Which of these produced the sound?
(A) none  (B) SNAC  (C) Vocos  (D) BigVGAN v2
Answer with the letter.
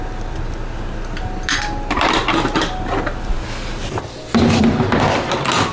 A